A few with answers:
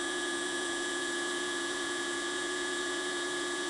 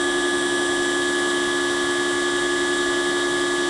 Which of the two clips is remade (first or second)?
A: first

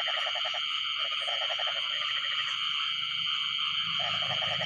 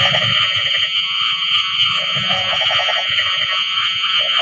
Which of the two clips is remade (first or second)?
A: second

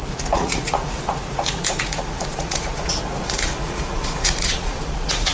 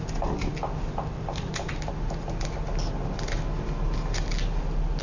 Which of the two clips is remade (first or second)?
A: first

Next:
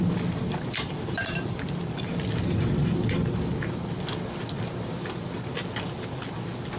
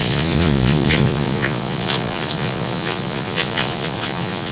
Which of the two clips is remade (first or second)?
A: second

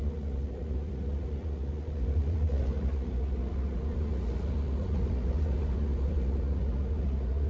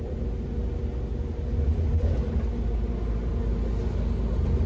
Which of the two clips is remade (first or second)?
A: first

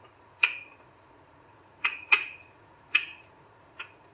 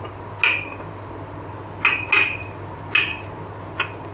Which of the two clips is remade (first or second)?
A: first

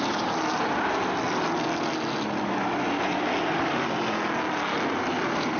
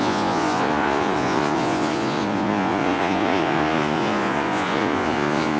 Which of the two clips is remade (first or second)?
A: second